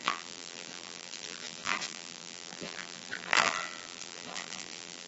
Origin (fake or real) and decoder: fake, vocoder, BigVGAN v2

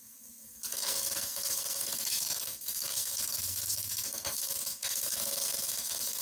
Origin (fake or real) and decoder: fake, codec, SNAC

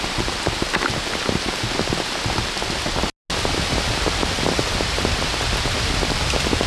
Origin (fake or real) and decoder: real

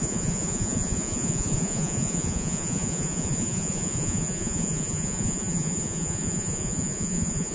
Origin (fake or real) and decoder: fake, vocoder, Vocos